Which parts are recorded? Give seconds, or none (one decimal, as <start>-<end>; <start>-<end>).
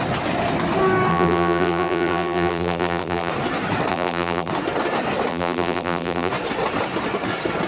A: 0.0-1.1; 3.3-3.9; 4.5-5.3; 6.3-7.7